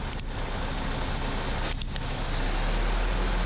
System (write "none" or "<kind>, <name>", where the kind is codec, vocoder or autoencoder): none